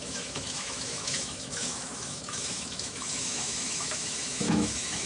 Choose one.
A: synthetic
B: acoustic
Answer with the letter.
A